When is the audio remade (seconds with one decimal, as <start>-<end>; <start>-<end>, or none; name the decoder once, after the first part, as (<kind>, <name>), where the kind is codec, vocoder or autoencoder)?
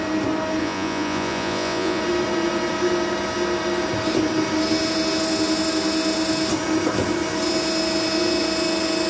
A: 0.6-2.0 (vocoder, Vocos)